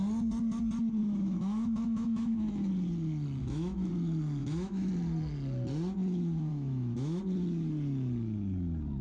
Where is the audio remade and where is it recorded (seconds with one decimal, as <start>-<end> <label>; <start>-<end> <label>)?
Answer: 0.0-1.0 recorded; 1.0-2.7 remade; 2.7-3.4 recorded; 3.4-3.9 remade; 3.9-4.4 recorded; 4.4-4.9 remade; 4.9-6.5 recorded; 6.5-7.2 remade; 7.2-9.0 recorded